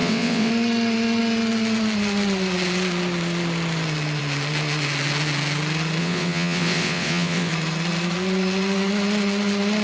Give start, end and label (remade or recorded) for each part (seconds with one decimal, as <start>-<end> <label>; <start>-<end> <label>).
0.0-0.5 remade; 0.5-6.0 recorded; 6.0-7.5 remade; 7.5-9.8 recorded